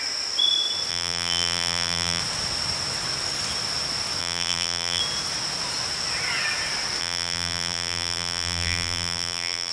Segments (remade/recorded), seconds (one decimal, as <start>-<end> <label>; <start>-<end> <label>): 0.0-0.9 recorded; 0.9-2.2 remade; 2.2-4.2 recorded; 4.2-5.0 remade; 5.0-7.0 recorded; 7.0-9.7 remade